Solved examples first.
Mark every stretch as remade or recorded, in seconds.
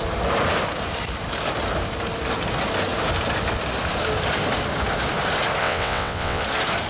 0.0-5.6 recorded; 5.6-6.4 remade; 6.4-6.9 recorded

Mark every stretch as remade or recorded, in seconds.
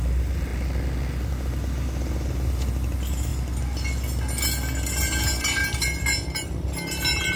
0.0-7.4 recorded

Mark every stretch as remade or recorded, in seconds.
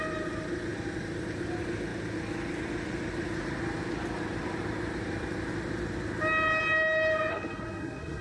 0.0-7.3 recorded; 7.3-8.2 remade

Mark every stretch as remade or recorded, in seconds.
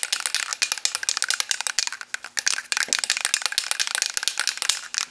0.0-5.1 recorded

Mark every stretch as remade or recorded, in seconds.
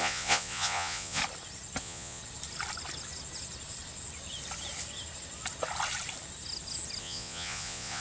0.0-1.2 remade; 1.2-1.8 recorded; 1.8-2.2 remade; 2.2-7.0 recorded; 7.0-8.0 remade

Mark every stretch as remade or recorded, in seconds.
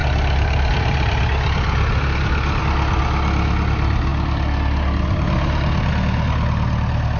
0.0-7.2 recorded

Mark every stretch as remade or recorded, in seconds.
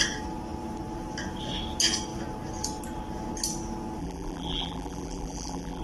0.0-4.0 recorded; 4.0-5.8 remade